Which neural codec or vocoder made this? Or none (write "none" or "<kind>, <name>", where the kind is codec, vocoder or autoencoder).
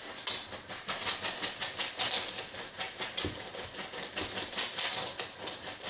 none